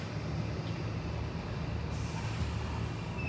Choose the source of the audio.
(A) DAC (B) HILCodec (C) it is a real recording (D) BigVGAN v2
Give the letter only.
C